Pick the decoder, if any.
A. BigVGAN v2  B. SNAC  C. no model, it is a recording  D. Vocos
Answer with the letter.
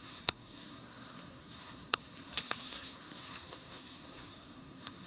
B